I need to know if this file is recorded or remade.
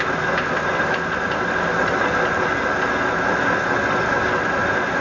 recorded